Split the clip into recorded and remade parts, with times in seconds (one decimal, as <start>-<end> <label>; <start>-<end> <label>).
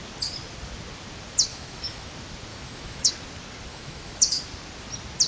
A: 0.0-1.5 recorded; 1.5-2.1 remade; 2.1-2.5 recorded; 2.5-3.1 remade; 3.1-3.7 recorded; 3.7-4.4 remade; 4.4-5.3 recorded